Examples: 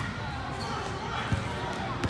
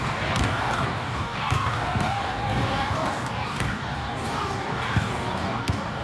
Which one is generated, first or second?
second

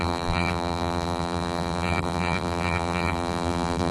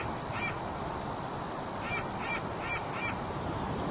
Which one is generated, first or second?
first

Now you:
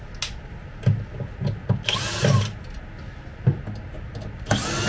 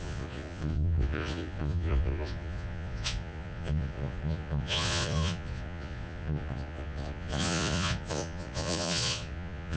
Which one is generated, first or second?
second